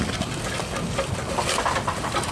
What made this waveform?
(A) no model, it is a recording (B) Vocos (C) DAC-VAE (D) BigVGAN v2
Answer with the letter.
A